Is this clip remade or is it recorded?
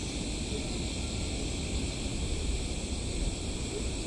recorded